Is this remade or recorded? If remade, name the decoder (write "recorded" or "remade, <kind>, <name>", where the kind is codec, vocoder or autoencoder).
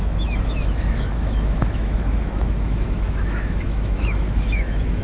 remade, autoencoder, DAC-VAE